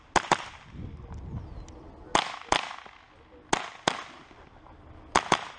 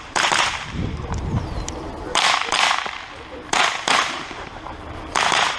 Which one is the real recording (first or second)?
first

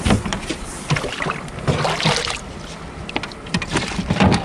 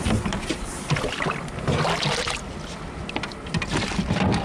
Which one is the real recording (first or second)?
second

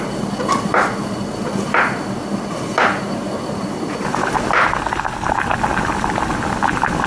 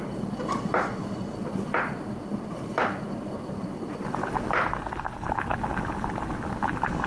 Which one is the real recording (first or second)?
first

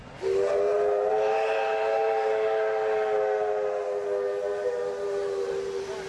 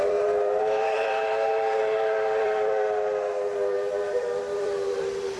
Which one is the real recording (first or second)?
first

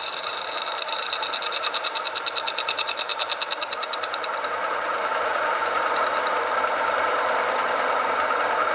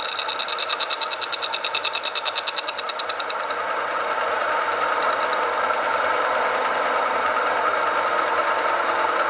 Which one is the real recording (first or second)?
second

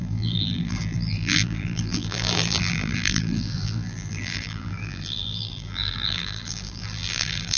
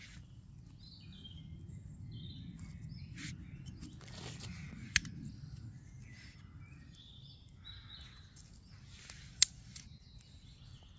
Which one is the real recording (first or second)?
second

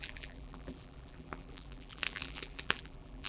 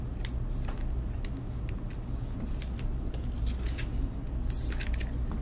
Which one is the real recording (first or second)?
second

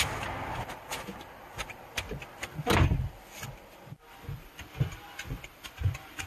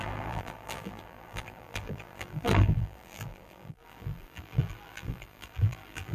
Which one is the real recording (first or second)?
first